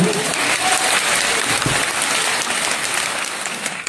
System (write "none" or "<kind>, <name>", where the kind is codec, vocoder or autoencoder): none